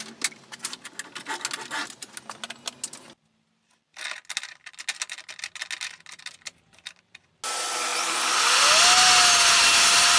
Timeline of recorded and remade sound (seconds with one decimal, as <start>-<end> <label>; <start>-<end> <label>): 0.0-10.2 recorded

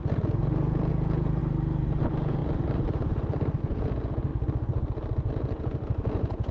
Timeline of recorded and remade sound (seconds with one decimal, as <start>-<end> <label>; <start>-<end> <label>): 0.0-1.4 remade; 1.4-2.0 recorded; 2.0-2.4 remade; 2.4-3.6 recorded; 3.6-4.3 remade; 4.3-5.3 recorded; 5.3-6.5 remade

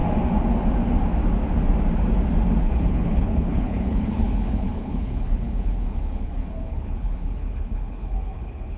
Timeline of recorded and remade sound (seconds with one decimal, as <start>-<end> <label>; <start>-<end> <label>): 0.0-2.6 recorded; 2.6-8.8 remade

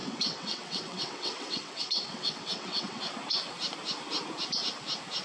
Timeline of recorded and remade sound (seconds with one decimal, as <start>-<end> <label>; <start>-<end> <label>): 0.0-3.0 remade; 3.0-5.2 recorded

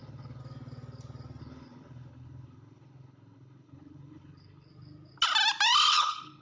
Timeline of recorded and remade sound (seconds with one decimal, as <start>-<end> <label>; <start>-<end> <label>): 0.0-0.4 remade; 0.4-1.4 recorded; 1.4-4.7 remade; 4.7-5.9 recorded; 5.9-6.4 remade

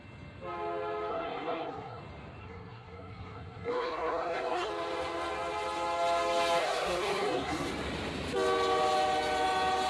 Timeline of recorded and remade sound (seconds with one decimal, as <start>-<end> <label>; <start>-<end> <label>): 0.0-1.1 recorded; 1.1-2.0 remade; 2.0-2.4 recorded; 2.4-4.7 remade; 4.7-6.6 recorded; 6.6-7.7 remade; 7.7-9.9 recorded